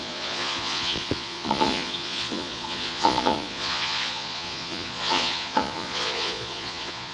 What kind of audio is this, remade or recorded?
remade